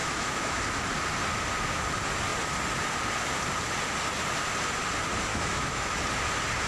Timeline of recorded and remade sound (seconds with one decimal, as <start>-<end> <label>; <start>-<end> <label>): 0.0-0.6 remade; 0.6-5.3 recorded; 5.3-6.0 remade; 6.0-6.7 recorded